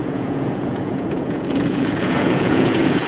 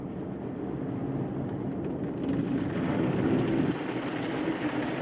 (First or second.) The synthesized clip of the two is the first